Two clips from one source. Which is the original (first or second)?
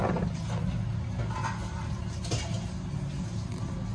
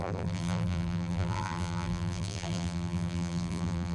first